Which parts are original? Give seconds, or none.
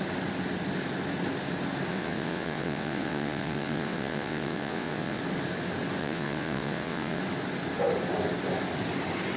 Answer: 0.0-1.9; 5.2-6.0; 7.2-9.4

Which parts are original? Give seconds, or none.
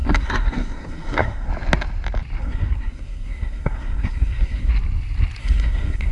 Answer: 1.5-2.4; 4.7-5.4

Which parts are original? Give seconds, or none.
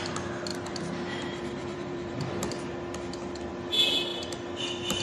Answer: 0.0-0.5; 3.5-4.1; 4.6-5.0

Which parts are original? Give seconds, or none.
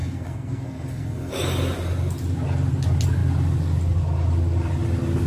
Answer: 1.3-5.3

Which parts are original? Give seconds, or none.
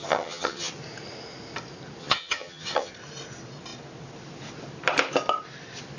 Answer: 0.7-2.0; 2.9-6.0